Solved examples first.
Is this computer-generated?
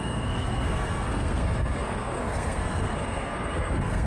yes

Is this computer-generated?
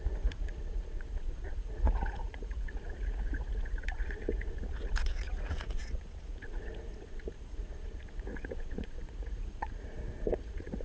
yes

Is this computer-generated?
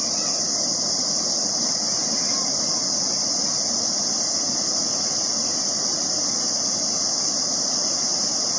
no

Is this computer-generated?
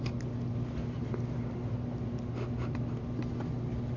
no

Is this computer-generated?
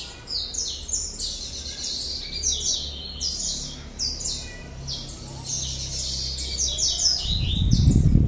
no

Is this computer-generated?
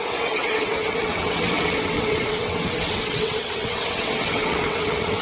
yes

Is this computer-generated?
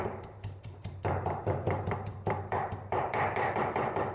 yes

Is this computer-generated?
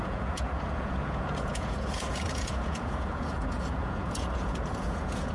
yes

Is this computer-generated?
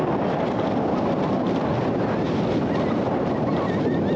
no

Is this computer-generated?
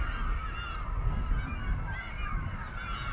no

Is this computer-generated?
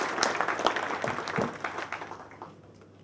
no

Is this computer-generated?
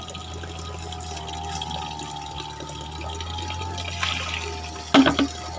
no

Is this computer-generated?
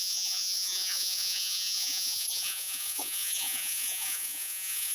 yes